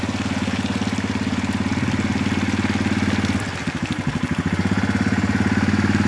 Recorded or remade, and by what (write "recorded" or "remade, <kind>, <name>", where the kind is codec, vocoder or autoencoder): recorded